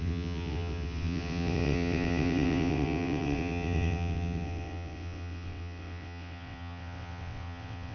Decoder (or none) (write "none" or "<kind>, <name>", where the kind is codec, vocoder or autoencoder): vocoder, WaveNeXt